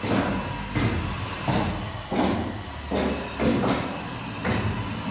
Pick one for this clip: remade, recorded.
recorded